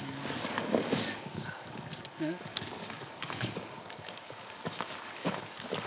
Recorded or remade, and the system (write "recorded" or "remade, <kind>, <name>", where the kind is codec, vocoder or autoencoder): remade, codec, DAC